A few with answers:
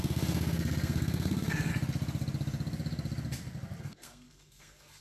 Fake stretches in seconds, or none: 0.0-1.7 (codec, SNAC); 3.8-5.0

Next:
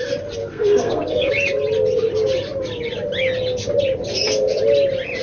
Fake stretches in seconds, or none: 0.4-1.3 (codec, SNAC)

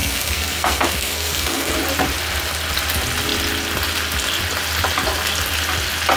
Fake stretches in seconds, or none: 0.0-1.7 (codec, SNAC)

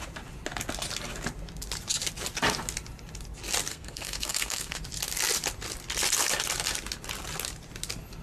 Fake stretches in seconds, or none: 3.7-4.8 (codec, SNAC)